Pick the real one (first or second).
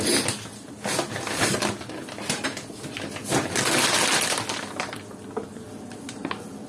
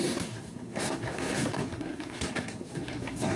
first